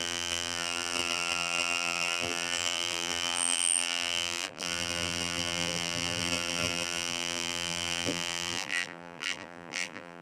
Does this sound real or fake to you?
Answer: fake